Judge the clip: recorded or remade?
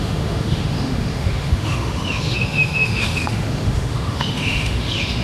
remade